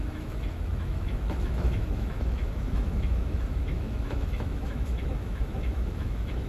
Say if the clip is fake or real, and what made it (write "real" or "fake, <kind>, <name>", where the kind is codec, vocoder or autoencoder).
fake, autoencoder, DAC-VAE